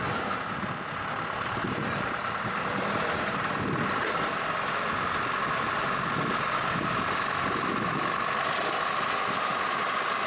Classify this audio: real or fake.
real